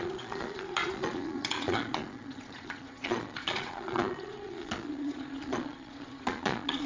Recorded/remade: remade